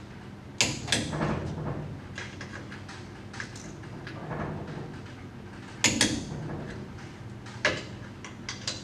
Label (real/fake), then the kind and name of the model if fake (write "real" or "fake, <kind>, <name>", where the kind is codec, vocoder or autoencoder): real